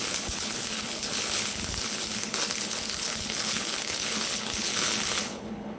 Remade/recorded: remade